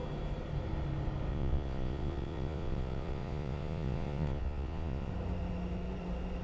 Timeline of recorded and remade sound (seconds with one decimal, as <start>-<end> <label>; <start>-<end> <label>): 0.0-1.3 recorded; 1.3-5.1 remade; 5.1-6.4 recorded